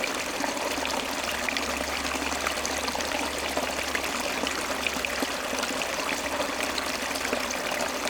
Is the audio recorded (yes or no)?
yes